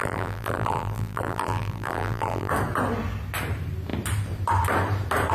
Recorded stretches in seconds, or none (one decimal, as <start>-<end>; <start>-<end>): 2.5-5.3